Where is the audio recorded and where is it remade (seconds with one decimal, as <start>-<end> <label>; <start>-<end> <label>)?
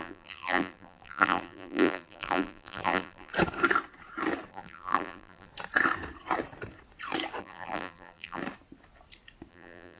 0.0-3.3 remade; 3.3-4.5 recorded; 4.5-5.5 remade; 5.5-7.4 recorded; 7.4-8.4 remade; 8.4-9.5 recorded; 9.5-10.0 remade